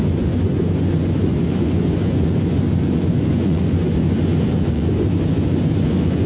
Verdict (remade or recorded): remade